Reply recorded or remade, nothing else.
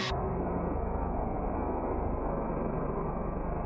remade